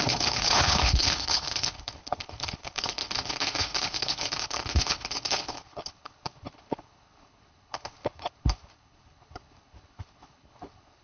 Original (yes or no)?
no